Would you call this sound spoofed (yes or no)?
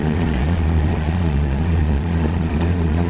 yes